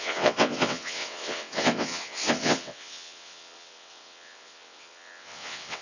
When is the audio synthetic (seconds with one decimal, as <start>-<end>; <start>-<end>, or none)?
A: 0.0-5.8